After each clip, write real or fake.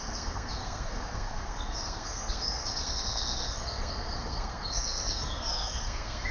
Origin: fake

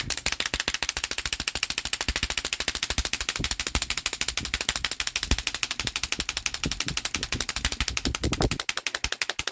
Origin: real